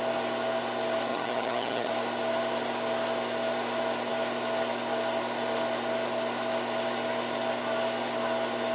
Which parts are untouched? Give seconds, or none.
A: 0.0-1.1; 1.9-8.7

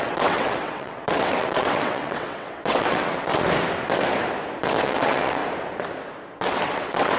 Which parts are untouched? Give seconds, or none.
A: 3.3-4.8; 5.4-6.3

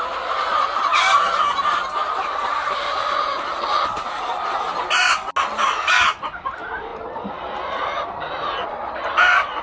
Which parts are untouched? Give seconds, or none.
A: 0.0-9.6

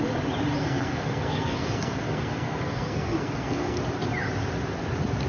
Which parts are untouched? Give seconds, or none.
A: 0.0-0.6; 3.8-5.3

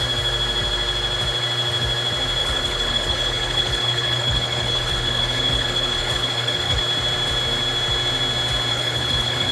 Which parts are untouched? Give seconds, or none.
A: 0.0-2.4; 6.8-8.7